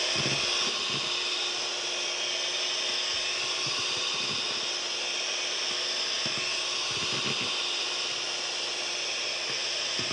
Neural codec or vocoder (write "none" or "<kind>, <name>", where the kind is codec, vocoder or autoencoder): none